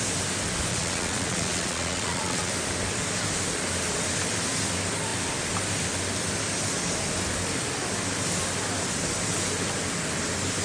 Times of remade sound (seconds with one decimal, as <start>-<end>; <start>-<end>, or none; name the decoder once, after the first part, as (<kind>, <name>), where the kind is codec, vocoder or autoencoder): 0.7-2.5 (vocoder, Vocos)